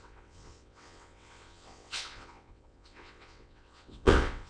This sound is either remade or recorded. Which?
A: remade